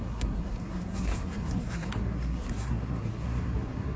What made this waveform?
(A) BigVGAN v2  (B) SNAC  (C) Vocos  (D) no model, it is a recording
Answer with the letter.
B